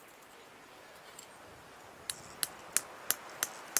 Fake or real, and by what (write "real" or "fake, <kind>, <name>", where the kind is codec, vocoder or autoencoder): real